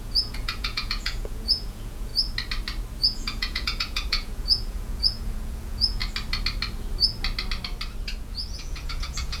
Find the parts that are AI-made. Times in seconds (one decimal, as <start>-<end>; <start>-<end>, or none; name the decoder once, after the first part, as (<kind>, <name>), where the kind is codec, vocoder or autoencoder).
0.0-2.1 (vocoder, Vocos); 3.0-6.0; 8.2-9.4